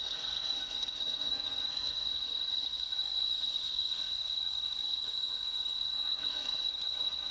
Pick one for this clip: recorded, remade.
remade